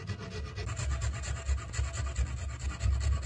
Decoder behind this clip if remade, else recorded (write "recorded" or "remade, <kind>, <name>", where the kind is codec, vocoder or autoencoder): recorded